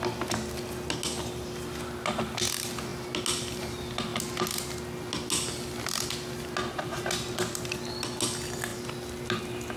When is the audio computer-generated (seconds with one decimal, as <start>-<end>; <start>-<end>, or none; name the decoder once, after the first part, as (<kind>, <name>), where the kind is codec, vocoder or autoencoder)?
none